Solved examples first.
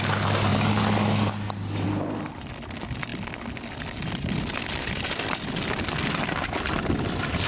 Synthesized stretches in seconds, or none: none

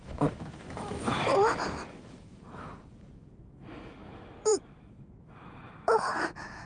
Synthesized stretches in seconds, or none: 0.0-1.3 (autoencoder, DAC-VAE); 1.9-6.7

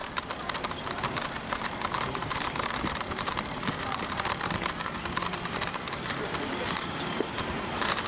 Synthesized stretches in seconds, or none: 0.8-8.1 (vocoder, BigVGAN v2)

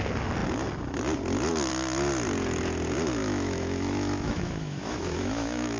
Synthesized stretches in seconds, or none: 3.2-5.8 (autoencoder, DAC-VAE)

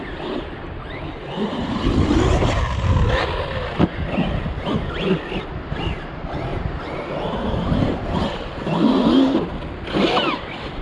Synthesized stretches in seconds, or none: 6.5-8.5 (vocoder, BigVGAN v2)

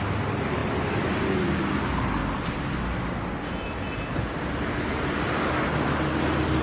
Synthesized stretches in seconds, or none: 2.2-6.6 (vocoder, BigVGAN v2)